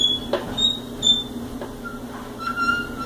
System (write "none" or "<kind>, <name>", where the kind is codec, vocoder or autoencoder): none